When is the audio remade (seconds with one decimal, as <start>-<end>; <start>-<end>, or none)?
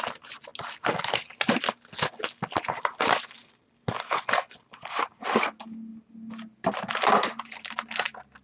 none